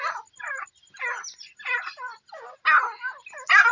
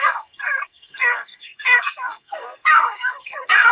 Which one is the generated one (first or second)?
second